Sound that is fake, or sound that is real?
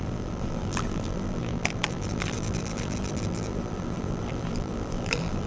fake